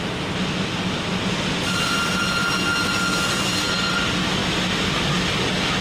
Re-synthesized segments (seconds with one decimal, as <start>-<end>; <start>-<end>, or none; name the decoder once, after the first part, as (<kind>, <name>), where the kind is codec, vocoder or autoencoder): none